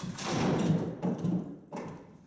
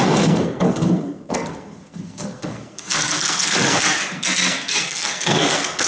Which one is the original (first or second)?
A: first